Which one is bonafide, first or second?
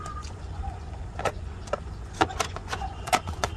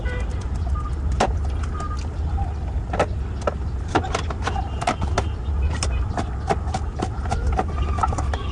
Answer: second